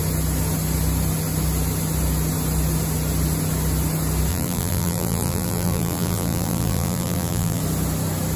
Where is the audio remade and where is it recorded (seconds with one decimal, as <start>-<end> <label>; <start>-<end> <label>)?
0.0-4.3 recorded; 4.3-7.6 remade; 7.6-8.4 recorded